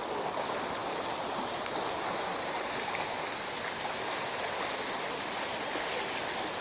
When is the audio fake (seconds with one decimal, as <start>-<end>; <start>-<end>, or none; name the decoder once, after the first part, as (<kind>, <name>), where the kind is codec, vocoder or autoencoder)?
none